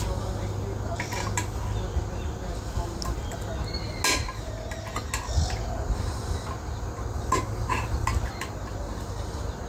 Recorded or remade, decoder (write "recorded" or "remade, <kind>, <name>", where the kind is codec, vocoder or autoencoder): recorded